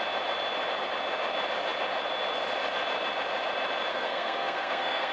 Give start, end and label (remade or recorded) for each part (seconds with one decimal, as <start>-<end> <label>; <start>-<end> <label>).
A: 0.0-3.9 recorded; 3.9-5.1 remade